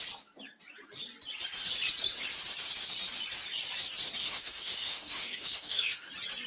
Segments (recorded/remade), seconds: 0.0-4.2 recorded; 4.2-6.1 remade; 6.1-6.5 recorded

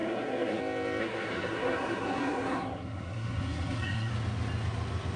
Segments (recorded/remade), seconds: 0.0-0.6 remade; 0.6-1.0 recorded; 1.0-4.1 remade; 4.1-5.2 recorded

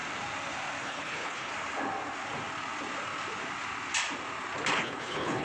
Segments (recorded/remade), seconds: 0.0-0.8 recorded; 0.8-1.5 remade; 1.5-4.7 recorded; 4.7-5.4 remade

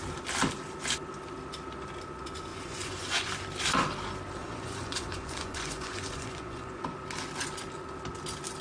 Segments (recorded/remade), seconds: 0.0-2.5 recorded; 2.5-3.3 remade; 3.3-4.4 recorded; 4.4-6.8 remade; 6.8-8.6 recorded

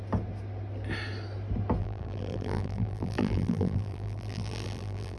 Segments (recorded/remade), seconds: 0.0-1.8 recorded; 1.8-5.2 remade

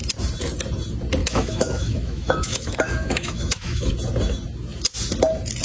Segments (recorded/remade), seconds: 0.0-1.2 recorded; 1.2-3.9 remade; 3.9-5.6 recorded

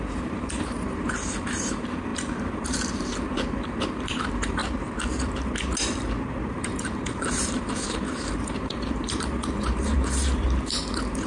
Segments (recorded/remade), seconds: 0.0-4.6 remade; 4.6-6.5 recorded; 6.5-11.3 remade